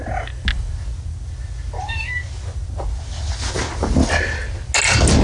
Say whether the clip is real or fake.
real